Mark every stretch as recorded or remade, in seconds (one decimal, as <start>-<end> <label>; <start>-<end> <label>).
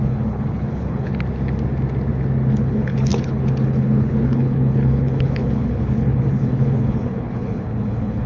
0.0-1.1 remade; 1.1-2.5 recorded; 2.5-8.3 remade